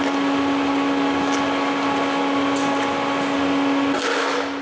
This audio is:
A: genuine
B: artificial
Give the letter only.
A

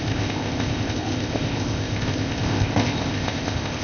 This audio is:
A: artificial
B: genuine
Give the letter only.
A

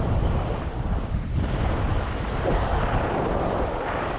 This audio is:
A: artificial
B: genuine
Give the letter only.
A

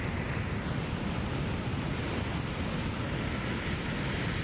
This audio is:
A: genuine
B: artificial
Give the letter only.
A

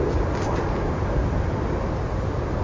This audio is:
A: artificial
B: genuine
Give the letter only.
B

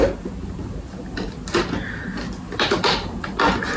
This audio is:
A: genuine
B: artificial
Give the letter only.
A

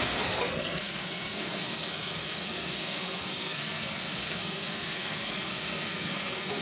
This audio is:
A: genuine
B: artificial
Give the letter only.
B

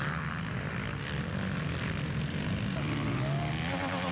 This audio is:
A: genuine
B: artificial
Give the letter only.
A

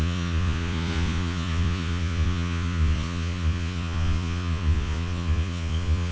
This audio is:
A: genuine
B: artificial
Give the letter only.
B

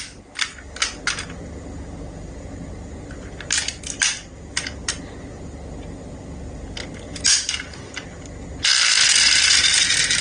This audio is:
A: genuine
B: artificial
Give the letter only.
A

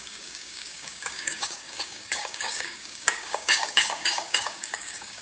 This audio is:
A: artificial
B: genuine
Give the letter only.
A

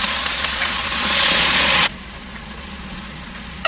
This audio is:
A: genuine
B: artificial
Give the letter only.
B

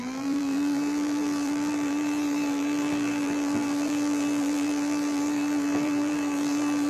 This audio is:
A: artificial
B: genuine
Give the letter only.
A